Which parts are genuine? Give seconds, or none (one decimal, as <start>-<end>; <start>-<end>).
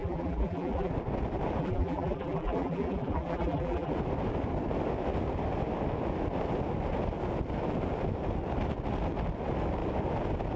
0.9-1.6; 3.9-10.6